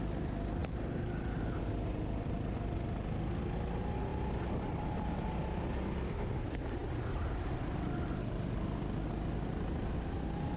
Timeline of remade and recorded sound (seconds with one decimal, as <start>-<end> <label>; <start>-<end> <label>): 0.0-10.6 recorded